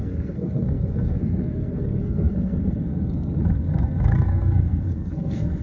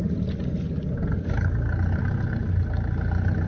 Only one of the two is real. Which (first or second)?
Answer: second